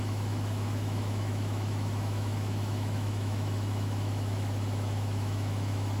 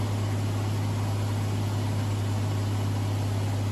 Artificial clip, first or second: first